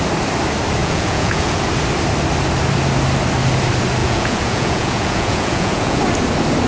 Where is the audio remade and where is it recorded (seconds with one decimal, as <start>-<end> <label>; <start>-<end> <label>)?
0.0-0.8 recorded; 0.8-1.7 remade; 1.7-4.0 recorded; 4.0-6.0 remade; 6.0-6.7 recorded